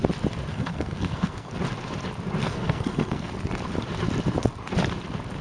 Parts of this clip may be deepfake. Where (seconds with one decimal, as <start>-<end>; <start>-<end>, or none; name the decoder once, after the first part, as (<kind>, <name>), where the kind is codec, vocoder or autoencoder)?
0.5-1.5 (codec, SNAC); 2.4-3.3